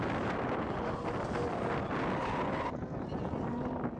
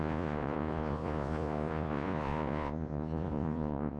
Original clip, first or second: first